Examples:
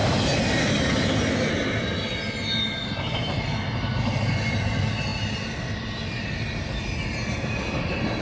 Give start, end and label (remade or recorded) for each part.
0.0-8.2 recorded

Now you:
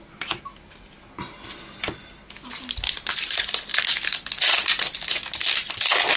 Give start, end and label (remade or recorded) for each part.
0.0-6.2 recorded

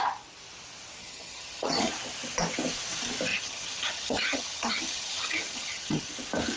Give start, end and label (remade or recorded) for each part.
0.0-1.0 recorded; 1.0-1.9 remade; 1.9-3.3 recorded; 3.3-6.1 remade; 6.1-6.6 recorded

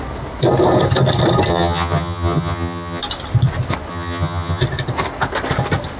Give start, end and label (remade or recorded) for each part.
0.0-1.5 recorded; 1.5-3.0 remade; 3.0-3.9 recorded; 3.9-4.6 remade; 4.6-6.0 recorded

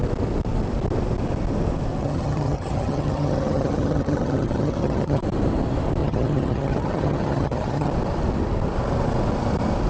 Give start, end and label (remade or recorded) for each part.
0.0-2.0 recorded; 2.0-5.2 remade; 5.2-6.0 recorded; 6.0-7.9 remade; 7.9-9.9 recorded

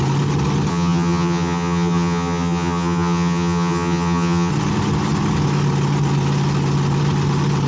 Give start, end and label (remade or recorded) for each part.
0.0-0.7 recorded; 0.7-4.5 remade; 4.5-7.7 recorded